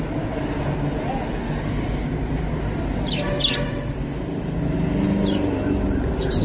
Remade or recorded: recorded